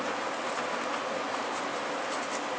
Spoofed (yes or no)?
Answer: no